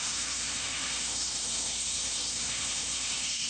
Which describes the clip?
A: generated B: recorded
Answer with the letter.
A